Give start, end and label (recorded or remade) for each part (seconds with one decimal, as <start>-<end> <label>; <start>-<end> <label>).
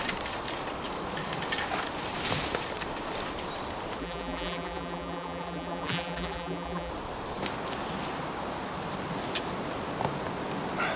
0.0-4.0 recorded; 4.0-6.9 remade; 6.9-11.0 recorded